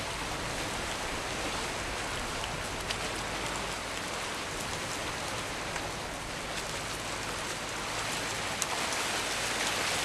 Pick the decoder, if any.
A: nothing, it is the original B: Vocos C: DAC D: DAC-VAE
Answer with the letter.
A